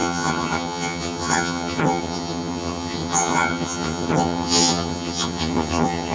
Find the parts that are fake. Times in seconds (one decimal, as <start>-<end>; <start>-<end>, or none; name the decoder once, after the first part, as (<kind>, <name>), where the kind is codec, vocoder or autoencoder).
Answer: 0.0-6.1 (vocoder, HiFi-GAN)